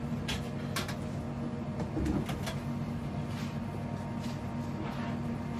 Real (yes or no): yes